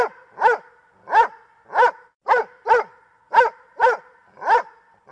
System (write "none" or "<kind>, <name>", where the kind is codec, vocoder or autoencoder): none